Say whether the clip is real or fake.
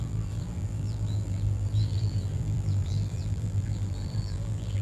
fake